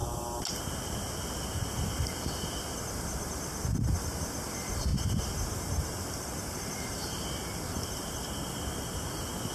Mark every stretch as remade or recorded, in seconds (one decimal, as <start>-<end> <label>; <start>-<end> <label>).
0.0-4.9 recorded; 4.9-8.6 remade; 8.6-9.5 recorded